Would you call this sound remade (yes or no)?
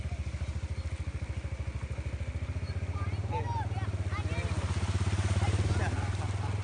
no